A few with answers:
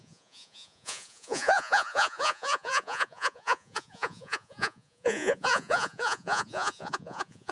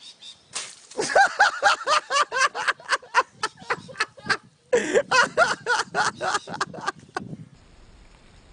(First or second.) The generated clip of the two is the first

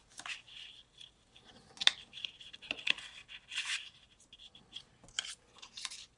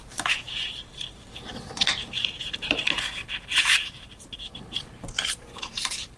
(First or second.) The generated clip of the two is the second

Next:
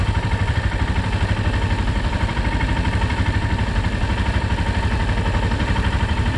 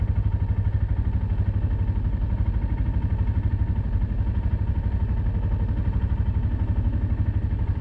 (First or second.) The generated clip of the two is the first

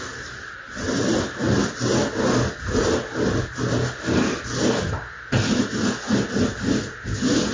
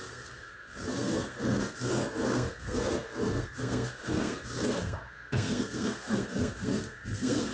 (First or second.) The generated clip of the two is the second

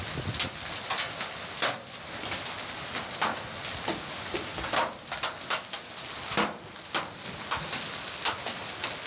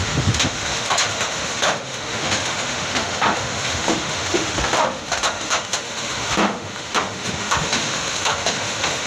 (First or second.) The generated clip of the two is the second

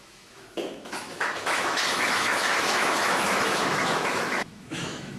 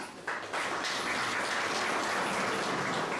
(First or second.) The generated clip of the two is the first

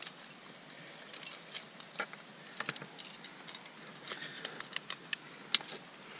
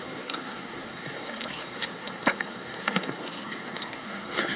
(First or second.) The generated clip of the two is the second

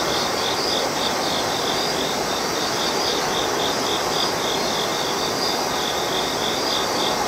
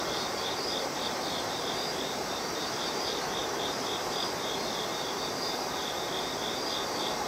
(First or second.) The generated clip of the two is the second